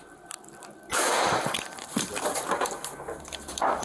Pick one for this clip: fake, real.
real